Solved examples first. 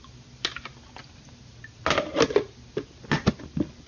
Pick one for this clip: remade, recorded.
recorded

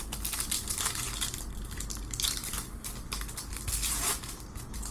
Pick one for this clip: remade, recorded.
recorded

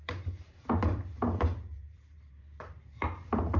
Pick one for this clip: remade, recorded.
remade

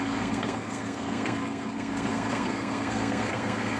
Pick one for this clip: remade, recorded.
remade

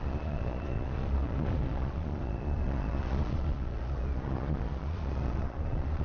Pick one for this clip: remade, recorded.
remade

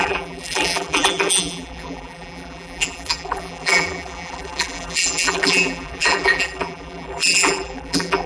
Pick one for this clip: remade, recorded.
remade